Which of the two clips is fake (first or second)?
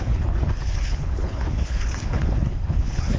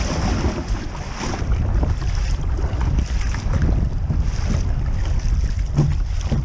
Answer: first